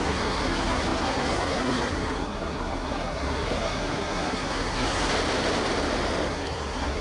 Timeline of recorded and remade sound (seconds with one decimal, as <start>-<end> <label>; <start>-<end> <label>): 0.0-5.1 remade; 5.1-6.3 recorded; 6.3-7.0 remade

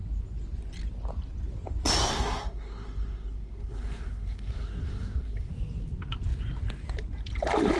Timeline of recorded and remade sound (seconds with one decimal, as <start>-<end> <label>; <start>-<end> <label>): 0.0-2.1 recorded; 2.1-5.5 remade; 5.5-7.8 recorded

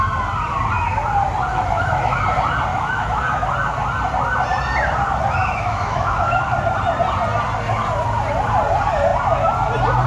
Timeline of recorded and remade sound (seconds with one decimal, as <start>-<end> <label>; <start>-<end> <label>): 0.0-1.5 recorded; 1.5-2.2 remade; 2.2-2.7 recorded; 2.7-3.2 remade; 3.2-5.4 recorded; 5.4-6.5 remade; 6.5-10.1 recorded

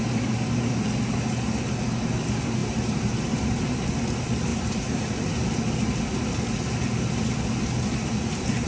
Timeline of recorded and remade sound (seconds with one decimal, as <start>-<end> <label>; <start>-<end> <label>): 0.0-2.6 recorded; 2.6-3.6 remade; 3.6-4.5 recorded; 4.5-5.6 remade; 5.6-8.7 recorded

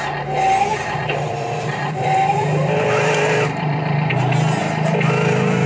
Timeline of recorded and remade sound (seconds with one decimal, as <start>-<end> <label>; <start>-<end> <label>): 0.0-0.7 recorded; 0.7-4.1 remade; 4.1-5.7 recorded